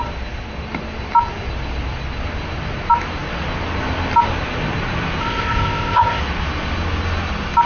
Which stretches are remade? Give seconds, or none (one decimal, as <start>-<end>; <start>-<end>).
5.2-6.2

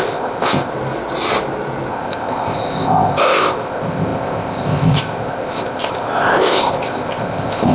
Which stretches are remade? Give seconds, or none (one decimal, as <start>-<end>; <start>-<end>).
0.0-0.7; 1.9-7.7

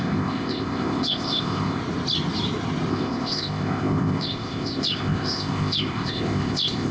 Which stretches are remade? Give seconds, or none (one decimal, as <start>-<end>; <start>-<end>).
0.0-1.8; 2.9-6.9

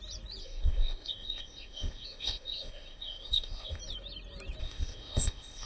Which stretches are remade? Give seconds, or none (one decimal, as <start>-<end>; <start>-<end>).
0.4-3.8; 4.6-5.7

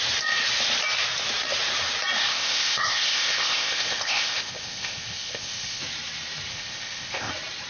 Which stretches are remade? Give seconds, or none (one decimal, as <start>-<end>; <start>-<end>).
2.2-5.8; 6.5-7.3

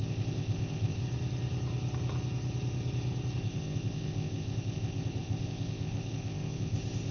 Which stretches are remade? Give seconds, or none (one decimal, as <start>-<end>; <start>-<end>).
0.0-1.0; 3.4-7.1